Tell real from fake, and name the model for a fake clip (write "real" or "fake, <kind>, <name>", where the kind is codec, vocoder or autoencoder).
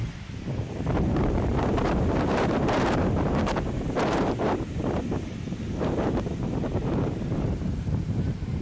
fake, vocoder, BigVGAN v2